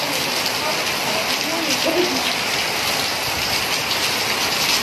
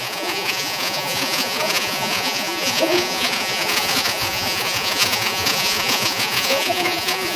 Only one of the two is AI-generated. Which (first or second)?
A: second